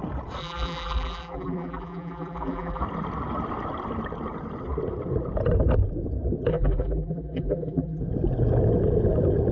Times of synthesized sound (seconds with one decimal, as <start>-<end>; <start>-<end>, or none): 0.4-2.8; 6.5-8.0

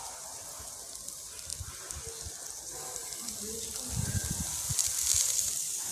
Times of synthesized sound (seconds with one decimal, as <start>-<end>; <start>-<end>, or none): 0.0-1.5; 2.6-3.0; 5.2-5.9